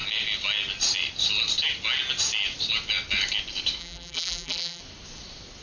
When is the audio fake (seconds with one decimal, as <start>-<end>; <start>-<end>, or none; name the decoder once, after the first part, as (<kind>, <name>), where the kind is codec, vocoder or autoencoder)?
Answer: 3.8-4.8 (vocoder, BigVGAN v2)